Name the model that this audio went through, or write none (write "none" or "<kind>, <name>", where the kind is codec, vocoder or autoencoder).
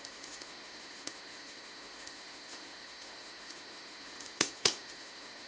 autoencoder, DAC-VAE